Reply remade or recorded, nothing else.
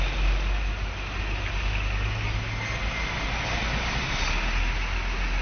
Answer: recorded